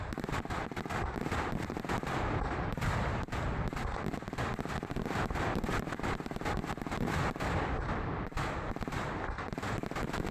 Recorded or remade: recorded